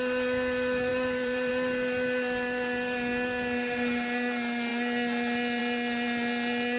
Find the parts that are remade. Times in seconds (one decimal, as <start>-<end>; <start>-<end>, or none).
0.9-1.5